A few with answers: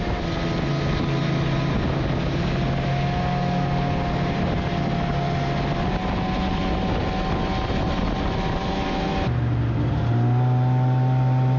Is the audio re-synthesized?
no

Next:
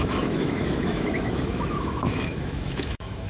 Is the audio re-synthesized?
yes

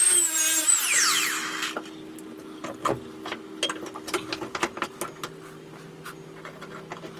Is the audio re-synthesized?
no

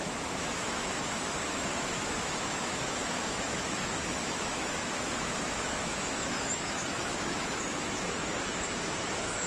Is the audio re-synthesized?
yes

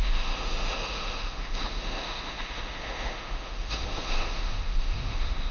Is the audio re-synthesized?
yes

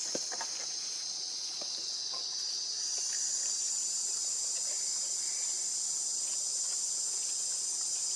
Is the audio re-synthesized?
no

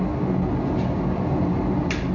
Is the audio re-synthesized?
no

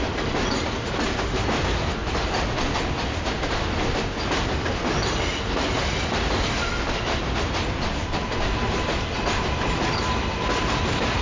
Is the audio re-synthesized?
no